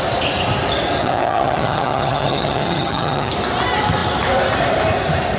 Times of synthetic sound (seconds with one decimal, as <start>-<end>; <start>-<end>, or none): 1.0-3.3